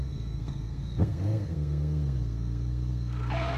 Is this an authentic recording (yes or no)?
no